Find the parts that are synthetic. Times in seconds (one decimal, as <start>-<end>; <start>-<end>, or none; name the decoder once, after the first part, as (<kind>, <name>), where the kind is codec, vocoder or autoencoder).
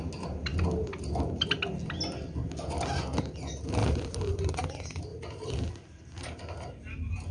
3.8-4.6 (vocoder, BigVGAN v2); 5.1-5.7